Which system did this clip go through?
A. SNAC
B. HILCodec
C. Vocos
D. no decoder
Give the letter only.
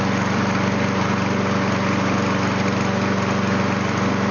D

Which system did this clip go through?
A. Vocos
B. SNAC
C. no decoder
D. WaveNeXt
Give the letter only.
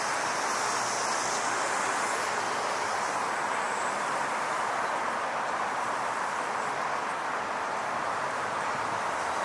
C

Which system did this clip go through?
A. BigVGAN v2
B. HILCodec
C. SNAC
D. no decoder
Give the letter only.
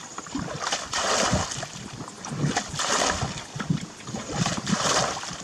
D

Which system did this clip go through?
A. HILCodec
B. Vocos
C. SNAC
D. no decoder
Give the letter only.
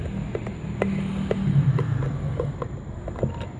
D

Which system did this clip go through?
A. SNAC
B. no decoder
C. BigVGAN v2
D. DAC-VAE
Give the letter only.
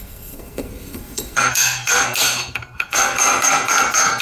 A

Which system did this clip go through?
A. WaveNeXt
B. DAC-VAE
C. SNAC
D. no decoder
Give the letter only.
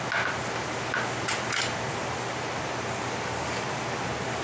D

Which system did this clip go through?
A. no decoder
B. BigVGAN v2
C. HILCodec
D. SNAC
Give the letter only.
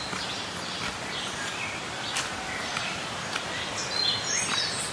A